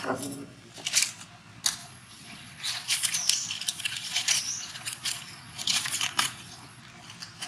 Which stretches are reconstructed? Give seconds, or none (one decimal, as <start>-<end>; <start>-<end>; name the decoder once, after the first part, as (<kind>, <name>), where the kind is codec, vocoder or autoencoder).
1.8-3.1 (vocoder, Vocos); 3.7-6.8